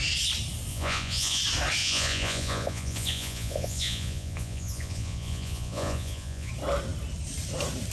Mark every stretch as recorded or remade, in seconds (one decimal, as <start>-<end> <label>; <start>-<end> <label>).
0.0-0.7 recorded; 0.7-1.4 remade; 1.4-1.8 recorded; 1.8-6.5 remade; 6.5-7.9 recorded

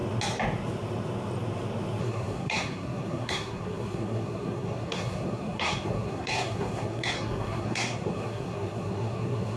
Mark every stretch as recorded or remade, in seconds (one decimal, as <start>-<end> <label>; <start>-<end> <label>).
0.0-2.0 recorded; 2.0-9.6 remade

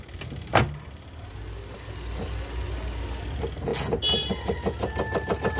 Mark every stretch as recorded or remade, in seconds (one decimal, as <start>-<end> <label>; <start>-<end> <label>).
0.0-5.6 recorded

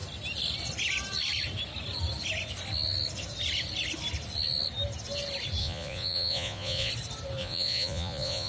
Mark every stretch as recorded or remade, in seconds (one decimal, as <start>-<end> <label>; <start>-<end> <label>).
0.0-5.6 recorded; 5.6-6.9 remade; 6.9-7.4 recorded; 7.4-8.5 remade

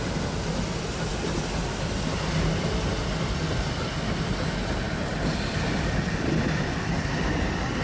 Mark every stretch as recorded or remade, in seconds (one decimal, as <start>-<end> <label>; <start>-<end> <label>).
0.0-7.8 recorded